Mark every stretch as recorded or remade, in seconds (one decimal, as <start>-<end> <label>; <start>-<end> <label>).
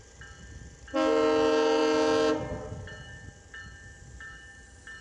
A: 0.0-5.0 recorded